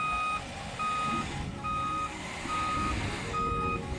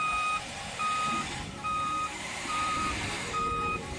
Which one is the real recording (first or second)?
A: first